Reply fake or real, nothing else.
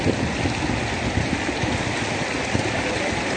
real